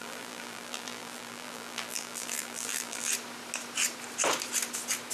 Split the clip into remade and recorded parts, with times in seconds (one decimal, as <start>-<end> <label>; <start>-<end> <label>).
0.0-3.1 remade; 3.1-5.1 recorded